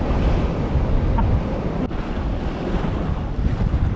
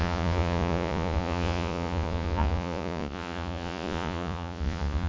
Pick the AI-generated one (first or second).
second